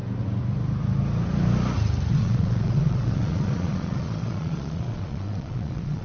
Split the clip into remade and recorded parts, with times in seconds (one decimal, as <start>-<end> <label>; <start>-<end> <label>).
0.0-2.1 recorded; 2.1-6.0 remade